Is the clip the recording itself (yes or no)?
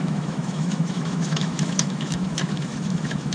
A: no